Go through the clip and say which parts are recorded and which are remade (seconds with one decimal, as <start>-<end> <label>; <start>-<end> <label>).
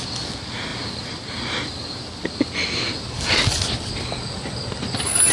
0.0-5.3 recorded